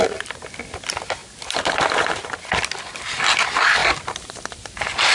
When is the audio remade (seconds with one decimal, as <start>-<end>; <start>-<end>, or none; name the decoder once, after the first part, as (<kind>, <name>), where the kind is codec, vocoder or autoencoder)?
1.2-2.7 (vocoder, BigVGAN v2); 3.8-5.1